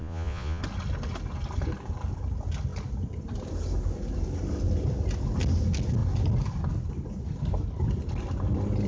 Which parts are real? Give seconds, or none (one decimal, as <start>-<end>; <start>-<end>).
0.6-8.9